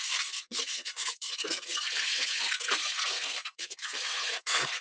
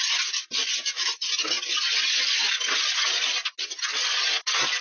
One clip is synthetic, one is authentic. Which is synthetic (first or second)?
first